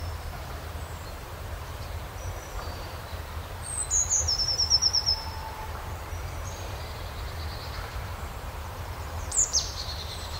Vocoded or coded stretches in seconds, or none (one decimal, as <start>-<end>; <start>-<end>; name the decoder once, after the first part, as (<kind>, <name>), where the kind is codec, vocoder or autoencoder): 0.0-3.8 (vocoder, BigVGAN v2); 4.4-10.4